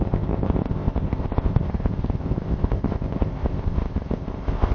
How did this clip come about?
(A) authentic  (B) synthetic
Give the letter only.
B